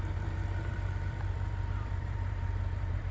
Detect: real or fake fake